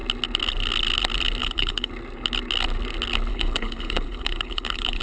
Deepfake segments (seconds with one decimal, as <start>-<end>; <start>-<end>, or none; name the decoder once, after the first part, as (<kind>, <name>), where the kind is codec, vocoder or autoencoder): 1.4-1.9 (codec, HILCodec); 3.3-5.0